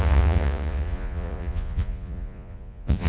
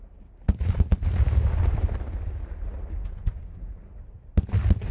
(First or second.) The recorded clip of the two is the second